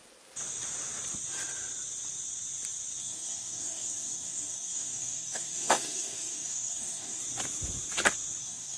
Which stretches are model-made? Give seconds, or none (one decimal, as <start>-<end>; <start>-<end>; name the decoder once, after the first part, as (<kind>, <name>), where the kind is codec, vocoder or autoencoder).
3.0-7.2 (codec, DAC); 8.4-8.8